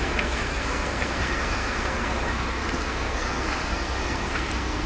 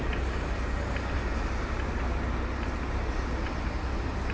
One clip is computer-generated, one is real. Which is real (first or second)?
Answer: second